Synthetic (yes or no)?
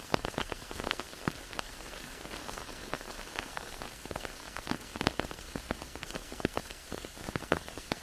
yes